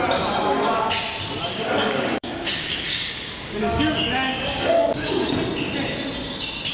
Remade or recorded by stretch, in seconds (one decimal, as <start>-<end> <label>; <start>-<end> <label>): 0.0-1.5 recorded; 1.5-5.3 remade; 5.3-6.7 recorded

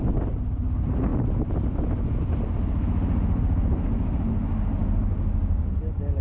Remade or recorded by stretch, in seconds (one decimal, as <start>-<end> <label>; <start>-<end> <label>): 0.0-4.8 recorded; 4.8-5.7 remade; 5.7-6.2 recorded

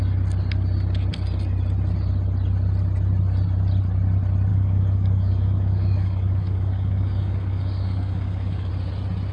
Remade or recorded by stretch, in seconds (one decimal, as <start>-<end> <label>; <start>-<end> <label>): 0.0-4.5 recorded; 4.5-8.7 remade; 8.7-9.3 recorded